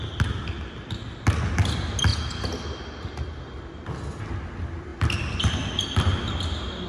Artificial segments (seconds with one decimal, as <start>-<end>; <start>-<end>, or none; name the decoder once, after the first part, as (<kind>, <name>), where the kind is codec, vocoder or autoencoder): 4.9-6.1 (vocoder, BigVGAN v2)